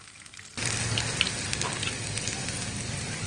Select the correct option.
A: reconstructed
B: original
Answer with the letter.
B